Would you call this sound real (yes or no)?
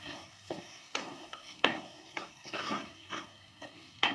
no